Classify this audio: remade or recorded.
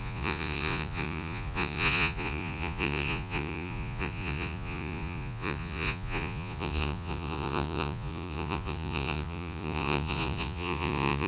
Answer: remade